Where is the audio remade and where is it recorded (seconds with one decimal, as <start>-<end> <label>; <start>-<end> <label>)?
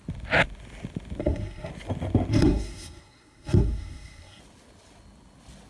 0.0-1.2 recorded; 1.2-1.7 remade; 1.7-2.3 recorded; 2.3-4.4 remade; 4.4-5.7 recorded